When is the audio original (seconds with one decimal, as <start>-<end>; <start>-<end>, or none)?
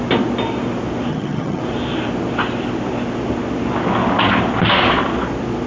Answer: 0.0-1.1; 1.6-5.7